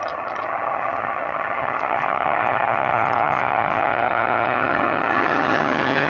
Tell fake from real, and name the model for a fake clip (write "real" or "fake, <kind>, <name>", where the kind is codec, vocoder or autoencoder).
fake, vocoder, HiFi-GAN